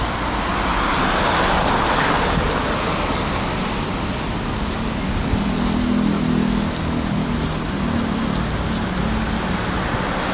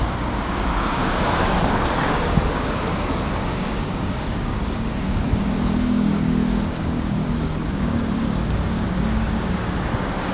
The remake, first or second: second